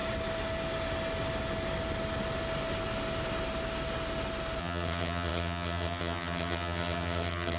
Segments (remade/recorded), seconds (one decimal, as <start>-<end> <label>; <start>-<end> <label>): 0.0-4.6 recorded; 4.6-7.6 remade